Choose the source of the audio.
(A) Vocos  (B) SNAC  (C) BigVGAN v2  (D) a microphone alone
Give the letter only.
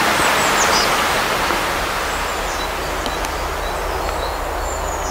D